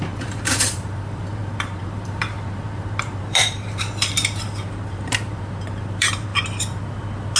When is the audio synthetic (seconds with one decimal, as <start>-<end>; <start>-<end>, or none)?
0.0-6.3